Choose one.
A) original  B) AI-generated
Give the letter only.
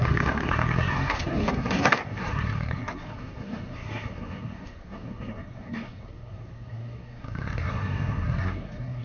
B